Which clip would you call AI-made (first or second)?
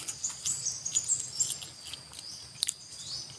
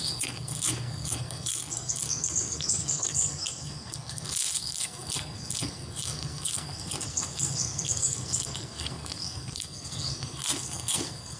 second